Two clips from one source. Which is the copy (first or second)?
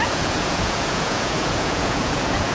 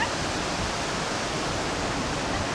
first